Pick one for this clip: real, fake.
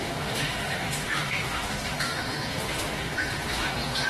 fake